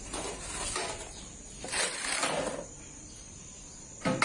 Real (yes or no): no